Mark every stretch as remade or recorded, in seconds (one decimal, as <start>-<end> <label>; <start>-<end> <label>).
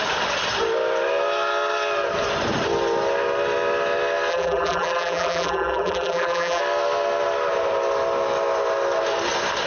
0.0-4.3 recorded; 4.3-6.6 remade; 6.6-9.7 recorded